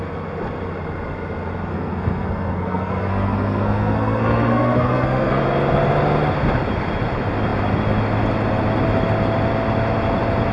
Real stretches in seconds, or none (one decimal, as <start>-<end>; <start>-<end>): 0.0-1.7; 5.4-10.5